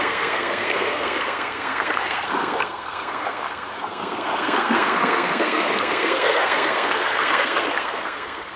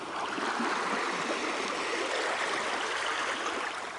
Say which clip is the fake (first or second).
first